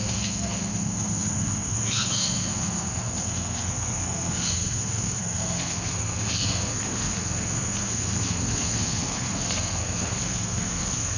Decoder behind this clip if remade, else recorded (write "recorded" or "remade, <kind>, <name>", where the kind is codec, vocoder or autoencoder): remade, codec, SNAC